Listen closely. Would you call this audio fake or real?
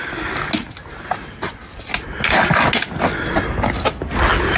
real